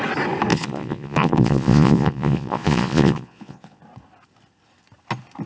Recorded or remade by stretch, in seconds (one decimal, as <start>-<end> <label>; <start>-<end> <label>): 0.0-0.5 recorded; 0.5-3.8 remade; 3.8-5.5 recorded

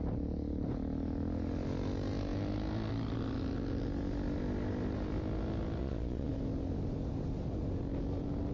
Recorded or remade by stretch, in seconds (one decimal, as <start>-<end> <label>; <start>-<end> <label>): 0.0-5.8 recorded; 5.8-6.3 remade; 6.3-8.5 recorded

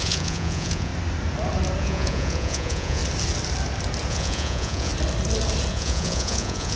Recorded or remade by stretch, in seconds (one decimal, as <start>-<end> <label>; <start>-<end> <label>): 0.0-0.9 remade; 0.9-1.8 recorded; 1.8-3.0 remade; 3.0-4.1 recorded; 4.1-4.9 remade; 4.9-5.7 recorded; 5.7-6.8 remade